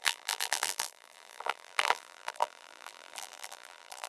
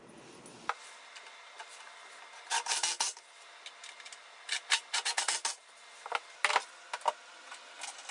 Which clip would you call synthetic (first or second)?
first